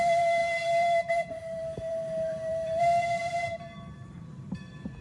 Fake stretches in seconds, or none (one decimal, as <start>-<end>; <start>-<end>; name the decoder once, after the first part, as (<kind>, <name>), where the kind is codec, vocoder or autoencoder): 0.0-5.0 (vocoder, BigVGAN v2)